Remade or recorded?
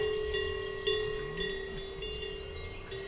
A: recorded